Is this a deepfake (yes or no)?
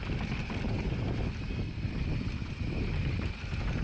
no